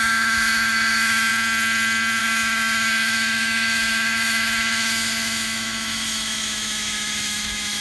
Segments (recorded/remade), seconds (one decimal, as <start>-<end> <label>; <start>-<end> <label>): 0.0-1.3 remade; 1.3-2.2 recorded; 2.2-7.8 remade